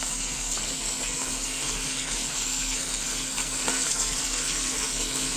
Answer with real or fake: fake